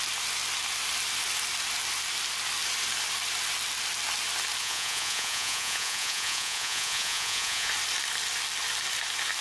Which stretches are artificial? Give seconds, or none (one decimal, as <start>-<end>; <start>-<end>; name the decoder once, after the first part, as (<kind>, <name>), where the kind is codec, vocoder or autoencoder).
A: 4.6-7.7 (vocoder, Vocos)